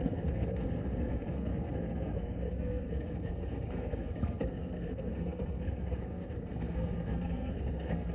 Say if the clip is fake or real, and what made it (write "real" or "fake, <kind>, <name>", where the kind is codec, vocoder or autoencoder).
fake, codec, SNAC